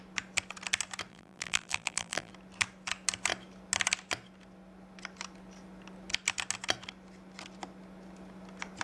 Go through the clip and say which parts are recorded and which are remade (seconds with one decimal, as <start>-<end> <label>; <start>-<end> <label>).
0.0-1.1 recorded; 1.1-2.3 remade; 2.3-8.8 recorded